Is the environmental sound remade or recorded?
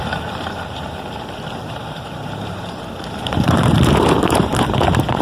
remade